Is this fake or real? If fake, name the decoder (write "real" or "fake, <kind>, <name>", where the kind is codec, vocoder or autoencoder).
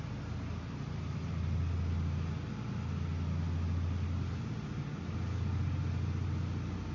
real